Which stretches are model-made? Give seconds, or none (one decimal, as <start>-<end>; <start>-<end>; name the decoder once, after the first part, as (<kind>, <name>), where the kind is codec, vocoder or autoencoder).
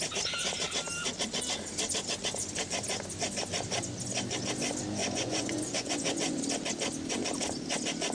5.0-6.4 (vocoder, Vocos)